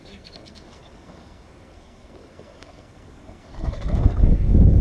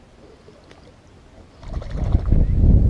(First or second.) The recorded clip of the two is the second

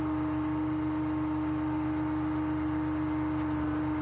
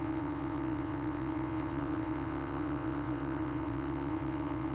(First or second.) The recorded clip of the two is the first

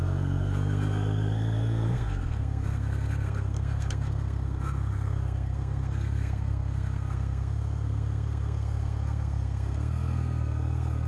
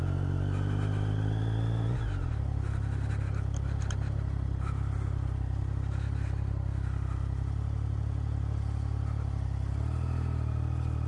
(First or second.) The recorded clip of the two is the second